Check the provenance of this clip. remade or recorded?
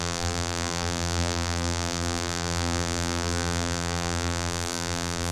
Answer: remade